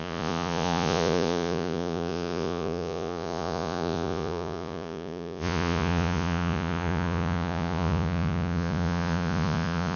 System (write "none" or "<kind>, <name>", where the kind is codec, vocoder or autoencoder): vocoder, Vocos